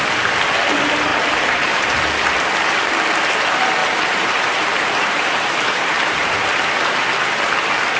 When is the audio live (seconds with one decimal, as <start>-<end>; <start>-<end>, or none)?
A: 0.0-1.1; 2.0-3.8; 6.3-8.0